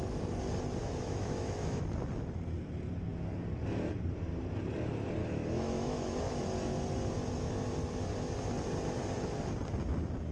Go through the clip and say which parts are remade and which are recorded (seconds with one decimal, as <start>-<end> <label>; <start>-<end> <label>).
0.0-0.8 recorded; 0.8-1.8 remade; 1.8-5.2 recorded; 5.2-6.4 remade; 6.4-10.3 recorded